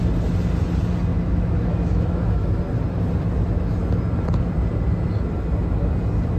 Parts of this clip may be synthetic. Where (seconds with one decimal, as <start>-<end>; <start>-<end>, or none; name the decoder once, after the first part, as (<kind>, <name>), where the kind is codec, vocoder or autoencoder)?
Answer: 1.1-2.6 (autoencoder, DAC-VAE)